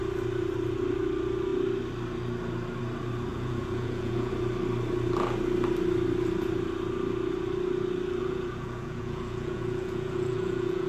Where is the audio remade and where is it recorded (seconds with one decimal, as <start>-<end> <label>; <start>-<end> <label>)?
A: 0.0-3.3 recorded; 3.3-4.3 remade; 4.3-8.2 recorded; 8.2-10.9 remade